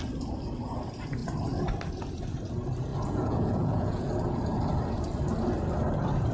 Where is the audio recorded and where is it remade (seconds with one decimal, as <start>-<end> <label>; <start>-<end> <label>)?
0.0-2.9 recorded; 2.9-4.1 remade; 4.1-6.3 recorded